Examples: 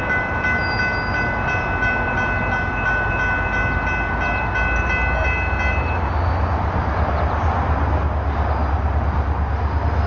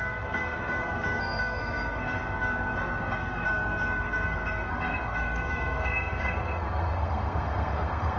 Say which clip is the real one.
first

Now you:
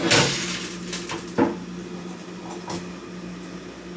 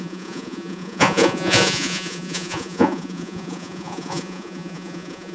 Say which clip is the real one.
first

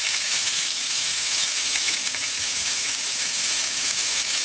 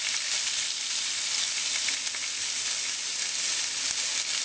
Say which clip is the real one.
second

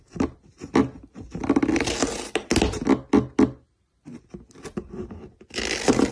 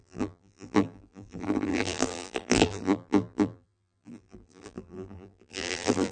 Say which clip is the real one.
first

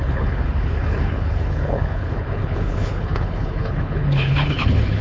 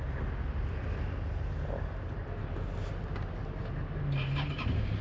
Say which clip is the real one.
second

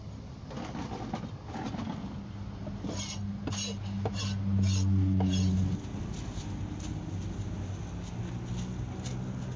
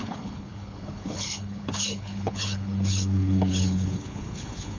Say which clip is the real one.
first